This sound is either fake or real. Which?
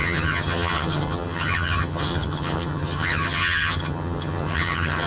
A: fake